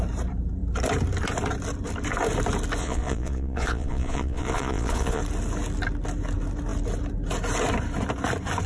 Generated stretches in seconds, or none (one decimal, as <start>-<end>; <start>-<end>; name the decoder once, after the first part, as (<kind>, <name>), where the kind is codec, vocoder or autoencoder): 2.8-5.2 (vocoder, Vocos)